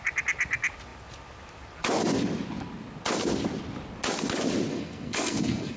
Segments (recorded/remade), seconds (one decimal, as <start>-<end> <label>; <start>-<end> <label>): 0.0-4.7 recorded; 4.7-5.8 remade